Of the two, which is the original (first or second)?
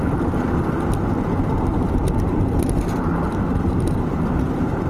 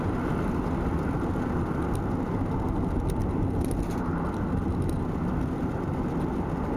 second